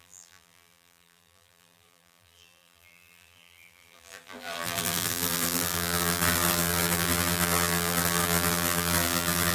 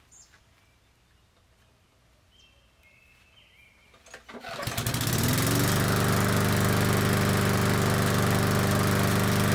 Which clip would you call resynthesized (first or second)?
first